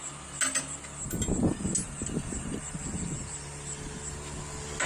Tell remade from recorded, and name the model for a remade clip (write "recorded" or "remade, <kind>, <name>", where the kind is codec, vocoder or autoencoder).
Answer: recorded